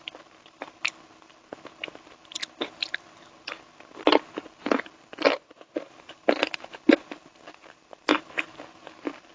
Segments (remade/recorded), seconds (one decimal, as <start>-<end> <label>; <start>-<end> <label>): 0.0-5.3 recorded; 5.3-5.9 remade; 5.9-9.3 recorded